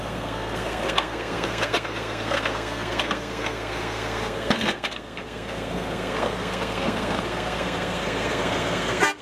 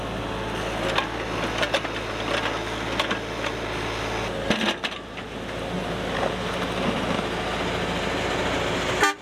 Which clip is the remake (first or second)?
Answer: first